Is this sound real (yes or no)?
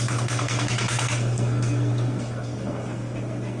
no